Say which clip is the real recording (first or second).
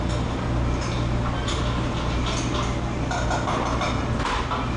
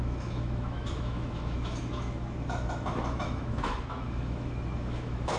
first